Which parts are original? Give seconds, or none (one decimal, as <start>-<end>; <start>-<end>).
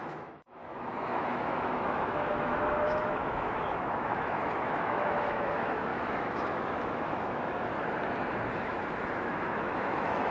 7.7-8.5